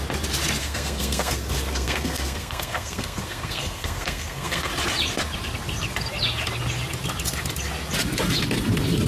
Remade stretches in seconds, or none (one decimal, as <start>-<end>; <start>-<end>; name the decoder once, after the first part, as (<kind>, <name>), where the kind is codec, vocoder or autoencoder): 0.6-4.7 (codec, SNAC)

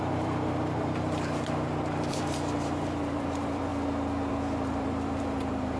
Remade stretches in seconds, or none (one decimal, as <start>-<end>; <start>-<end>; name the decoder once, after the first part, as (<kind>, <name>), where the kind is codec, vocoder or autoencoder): 0.0-3.7 (vocoder, BigVGAN v2); 4.3-5.8

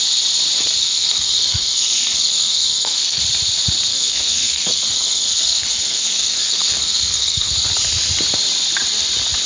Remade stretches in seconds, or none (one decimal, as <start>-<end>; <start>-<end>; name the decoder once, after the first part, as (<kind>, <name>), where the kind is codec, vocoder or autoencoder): 0.8-3.2 (codec, SNAC); 3.9-7.5

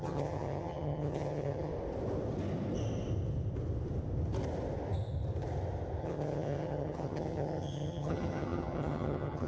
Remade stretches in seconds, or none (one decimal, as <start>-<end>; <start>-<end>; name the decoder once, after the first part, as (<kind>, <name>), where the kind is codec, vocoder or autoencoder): 0.0-1.7 (vocoder, HiFi-GAN); 6.0-9.5

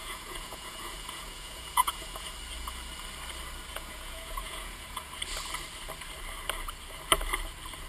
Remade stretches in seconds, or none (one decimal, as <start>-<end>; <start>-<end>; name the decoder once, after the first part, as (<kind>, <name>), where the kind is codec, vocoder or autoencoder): 0.0-2.3 (vocoder, Vocos); 3.7-5.1

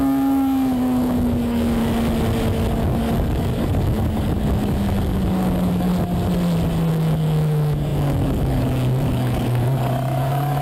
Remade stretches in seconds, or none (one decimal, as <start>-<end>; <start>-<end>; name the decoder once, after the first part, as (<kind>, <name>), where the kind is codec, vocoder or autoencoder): 0.0-1.8 (codec, DAC); 2.7-5.9; 6.9-10.6

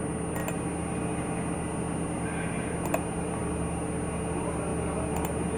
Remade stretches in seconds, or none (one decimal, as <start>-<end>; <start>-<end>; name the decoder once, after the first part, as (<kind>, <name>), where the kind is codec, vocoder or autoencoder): none